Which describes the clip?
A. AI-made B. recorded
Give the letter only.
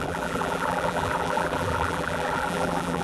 A